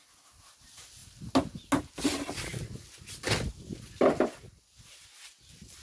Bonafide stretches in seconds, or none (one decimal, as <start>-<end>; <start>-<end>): 0.0-5.8